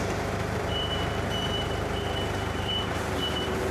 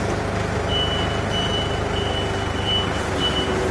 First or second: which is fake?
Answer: first